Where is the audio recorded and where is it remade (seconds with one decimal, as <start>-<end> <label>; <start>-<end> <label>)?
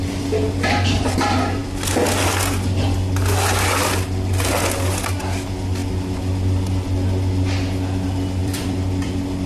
0.0-8.4 recorded; 8.4-9.5 remade